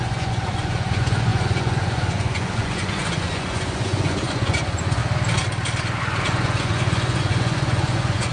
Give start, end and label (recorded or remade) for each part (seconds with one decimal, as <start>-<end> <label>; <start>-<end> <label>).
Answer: 0.0-5.0 remade; 5.0-6.0 recorded; 6.0-8.3 remade